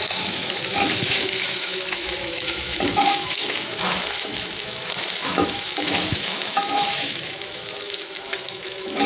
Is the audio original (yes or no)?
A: no